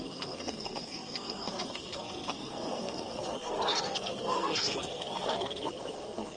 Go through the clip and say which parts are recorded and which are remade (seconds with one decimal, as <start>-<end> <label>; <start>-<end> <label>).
0.0-6.4 remade